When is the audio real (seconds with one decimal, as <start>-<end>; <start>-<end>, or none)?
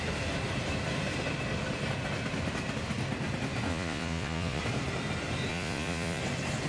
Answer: 0.0-3.7; 4.6-5.5; 6.2-6.7